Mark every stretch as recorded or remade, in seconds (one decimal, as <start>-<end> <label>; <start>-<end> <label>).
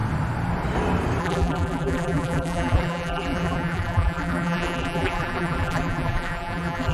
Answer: 0.0-1.2 recorded; 1.2-6.9 remade